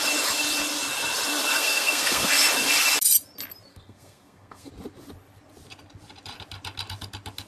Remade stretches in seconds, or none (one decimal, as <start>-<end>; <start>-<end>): 1.5-2.3; 3.7-4.7